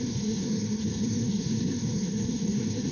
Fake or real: fake